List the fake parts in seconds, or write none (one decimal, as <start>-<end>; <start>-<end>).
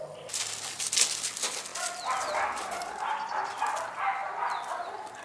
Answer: none